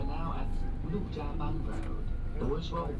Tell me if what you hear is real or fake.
real